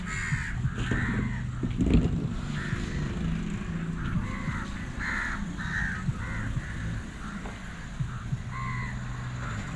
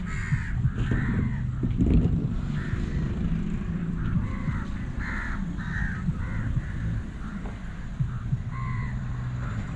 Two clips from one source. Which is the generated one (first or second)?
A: second